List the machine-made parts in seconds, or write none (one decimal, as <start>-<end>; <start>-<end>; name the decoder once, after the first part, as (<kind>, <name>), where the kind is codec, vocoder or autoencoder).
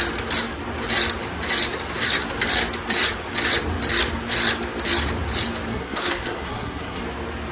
5.7-7.0 (codec, SNAC)